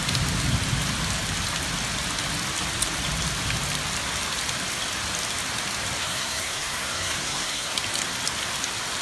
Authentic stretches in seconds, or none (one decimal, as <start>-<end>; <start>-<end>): 0.0-6.0; 7.8-9.0